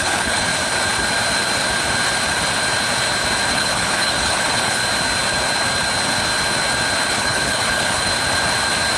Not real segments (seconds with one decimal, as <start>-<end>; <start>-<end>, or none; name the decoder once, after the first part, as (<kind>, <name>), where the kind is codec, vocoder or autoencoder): 0.0-0.5 (codec, HILCodec); 3.5-4.8; 7.1-8.1